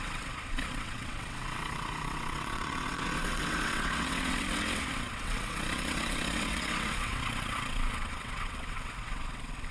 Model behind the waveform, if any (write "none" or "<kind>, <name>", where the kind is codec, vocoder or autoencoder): vocoder, WaveNeXt